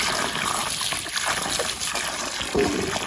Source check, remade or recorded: recorded